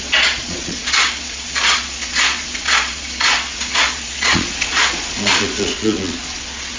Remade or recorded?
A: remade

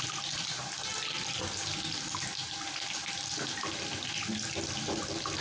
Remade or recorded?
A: recorded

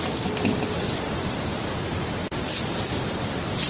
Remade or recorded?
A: recorded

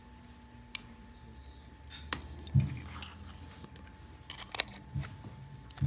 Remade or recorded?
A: recorded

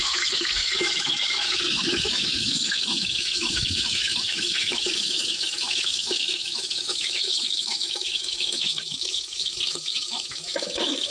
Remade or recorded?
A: remade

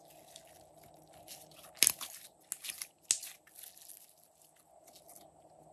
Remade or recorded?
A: recorded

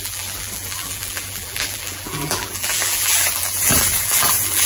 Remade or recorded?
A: remade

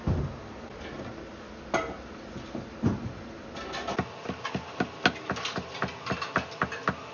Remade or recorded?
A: recorded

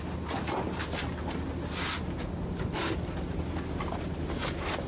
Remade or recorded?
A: recorded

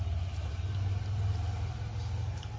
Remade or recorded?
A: recorded